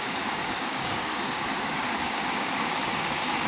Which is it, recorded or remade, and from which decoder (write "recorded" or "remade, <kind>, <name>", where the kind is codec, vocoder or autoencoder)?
remade, codec, DAC